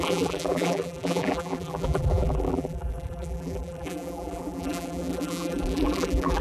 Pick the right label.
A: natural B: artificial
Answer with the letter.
B